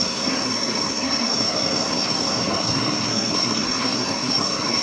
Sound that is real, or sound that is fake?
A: fake